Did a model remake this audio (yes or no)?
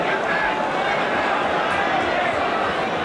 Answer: no